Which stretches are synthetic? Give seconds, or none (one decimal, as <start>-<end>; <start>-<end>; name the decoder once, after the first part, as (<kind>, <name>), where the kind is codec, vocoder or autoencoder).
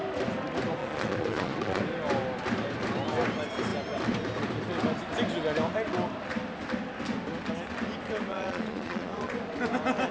0.8-1.8 (vocoder, Vocos); 8.3-9.3